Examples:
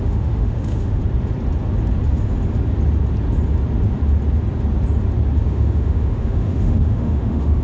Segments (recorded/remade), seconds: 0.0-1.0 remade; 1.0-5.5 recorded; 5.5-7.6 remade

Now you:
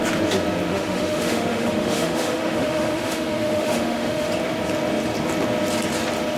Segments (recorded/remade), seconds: 0.0-0.7 recorded; 0.7-4.3 remade; 4.3-6.4 recorded

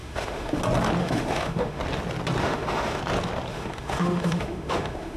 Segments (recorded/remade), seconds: 0.0-0.6 remade; 0.6-1.0 recorded; 1.0-1.8 remade; 1.8-2.4 recorded; 2.4-3.0 remade; 3.0-3.5 recorded; 3.5-5.2 remade

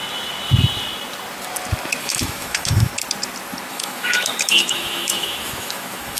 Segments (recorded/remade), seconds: 0.0-2.0 recorded; 2.0-2.9 remade; 2.9-3.7 recorded; 3.7-6.2 remade

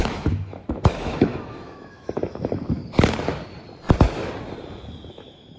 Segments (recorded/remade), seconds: 0.0-2.8 remade; 2.8-5.1 recorded; 5.1-5.6 remade

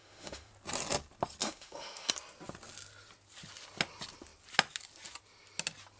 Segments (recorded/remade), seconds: 0.0-0.5 remade; 0.5-1.4 recorded; 1.4-2.1 remade; 2.1-6.0 recorded

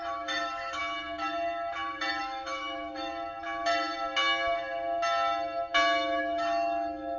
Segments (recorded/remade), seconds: 0.0-0.8 remade; 0.8-2.2 recorded; 2.2-3.1 remade; 3.1-6.2 recorded; 6.2-7.2 remade

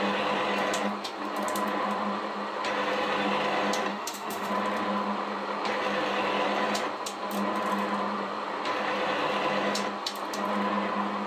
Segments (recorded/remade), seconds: 0.0-3.9 recorded; 3.9-4.5 remade; 4.5-11.3 recorded